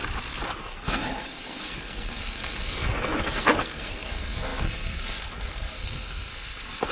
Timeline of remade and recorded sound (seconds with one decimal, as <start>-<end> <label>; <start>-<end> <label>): 0.0-0.6 recorded; 0.6-6.9 remade